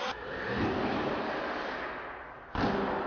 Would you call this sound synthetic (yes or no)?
no